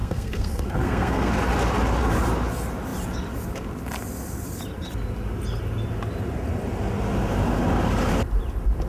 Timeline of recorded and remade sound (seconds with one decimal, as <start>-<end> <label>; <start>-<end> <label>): 0.0-1.3 remade; 1.3-8.9 recorded